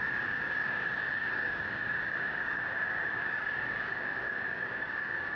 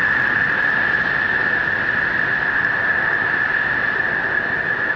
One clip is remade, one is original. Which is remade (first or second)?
first